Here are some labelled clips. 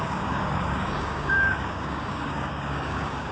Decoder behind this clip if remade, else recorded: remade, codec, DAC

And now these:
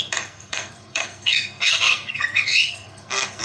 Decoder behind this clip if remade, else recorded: remade, codec, SNAC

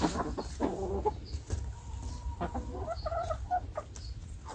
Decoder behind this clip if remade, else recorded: recorded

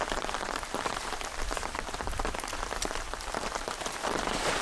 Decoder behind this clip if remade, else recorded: remade, vocoder, BigVGAN v2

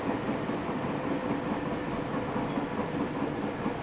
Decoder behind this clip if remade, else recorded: recorded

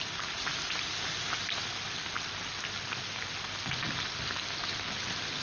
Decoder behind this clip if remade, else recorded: recorded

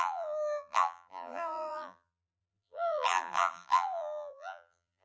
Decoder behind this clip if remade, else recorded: remade, vocoder, BigVGAN v2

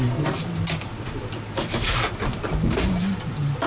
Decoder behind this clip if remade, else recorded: remade, vocoder, BigVGAN v2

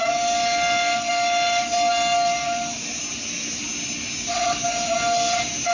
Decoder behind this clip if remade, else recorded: recorded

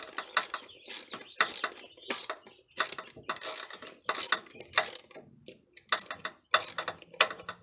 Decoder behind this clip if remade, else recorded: recorded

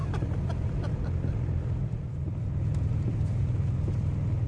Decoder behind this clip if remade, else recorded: recorded